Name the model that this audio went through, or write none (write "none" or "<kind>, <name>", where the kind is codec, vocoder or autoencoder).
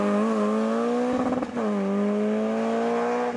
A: none